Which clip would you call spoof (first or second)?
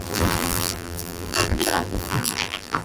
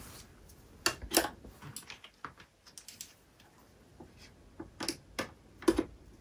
first